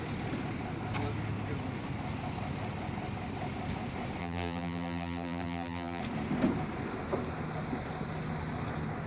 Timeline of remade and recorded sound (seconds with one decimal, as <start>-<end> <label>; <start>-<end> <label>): 0.0-4.2 recorded; 4.2-6.0 remade; 6.0-9.1 recorded